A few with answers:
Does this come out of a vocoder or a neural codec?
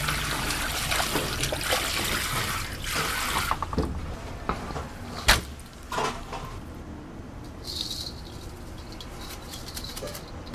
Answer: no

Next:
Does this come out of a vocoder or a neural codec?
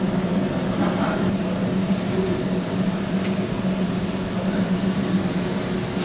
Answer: no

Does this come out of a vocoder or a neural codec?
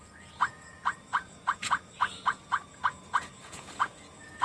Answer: yes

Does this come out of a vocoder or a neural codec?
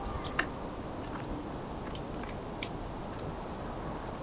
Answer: no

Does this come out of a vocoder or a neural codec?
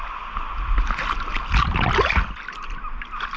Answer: no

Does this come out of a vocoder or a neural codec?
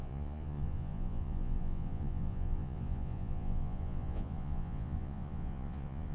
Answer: yes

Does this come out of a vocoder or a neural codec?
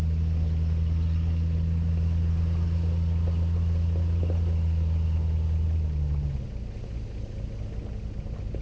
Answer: no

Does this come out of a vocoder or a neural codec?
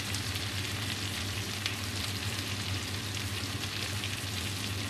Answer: no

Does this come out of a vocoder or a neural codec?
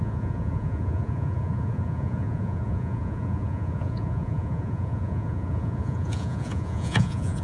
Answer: yes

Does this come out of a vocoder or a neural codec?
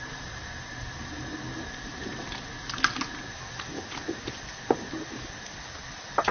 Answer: no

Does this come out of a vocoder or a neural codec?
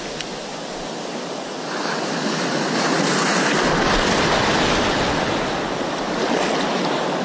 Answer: no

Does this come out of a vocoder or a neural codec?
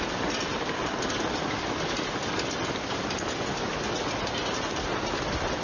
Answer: no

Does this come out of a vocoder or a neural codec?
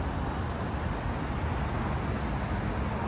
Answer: no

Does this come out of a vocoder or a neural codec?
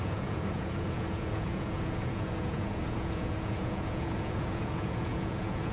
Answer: yes